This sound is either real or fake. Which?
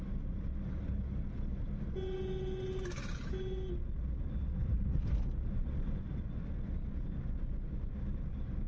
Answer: real